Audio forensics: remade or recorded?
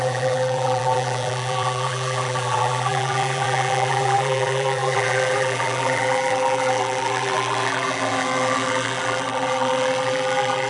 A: remade